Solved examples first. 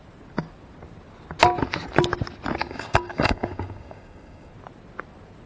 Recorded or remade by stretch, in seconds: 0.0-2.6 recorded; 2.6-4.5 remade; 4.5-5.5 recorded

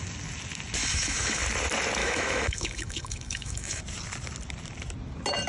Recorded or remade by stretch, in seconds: 0.0-0.8 recorded; 0.8-1.4 remade; 1.4-2.0 recorded; 2.0-3.8 remade; 3.8-5.5 recorded

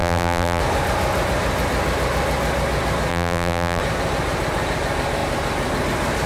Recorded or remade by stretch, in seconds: 0.0-0.6 remade; 0.6-3.1 recorded; 3.1-3.8 remade; 3.8-6.3 recorded

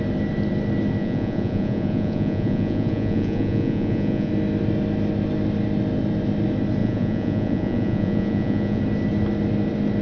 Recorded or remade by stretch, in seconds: 0.0-1.0 recorded; 1.0-4.3 remade; 4.3-6.8 recorded; 6.8-8.8 remade; 8.8-10.0 recorded

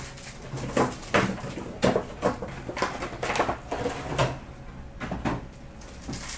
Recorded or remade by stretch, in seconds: 0.0-6.4 recorded